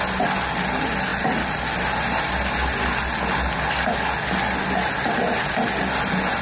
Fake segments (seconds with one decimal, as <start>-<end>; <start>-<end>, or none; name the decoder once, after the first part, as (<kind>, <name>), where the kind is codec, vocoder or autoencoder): none